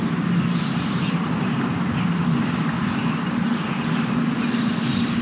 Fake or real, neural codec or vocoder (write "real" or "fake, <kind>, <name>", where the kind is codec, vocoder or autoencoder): real